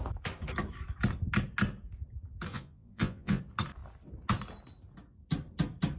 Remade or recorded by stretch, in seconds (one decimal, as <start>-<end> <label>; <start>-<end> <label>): 0.0-2.5 recorded; 2.5-3.4 remade; 3.4-6.0 recorded